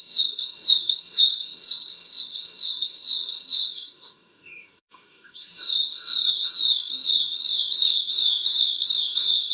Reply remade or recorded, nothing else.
remade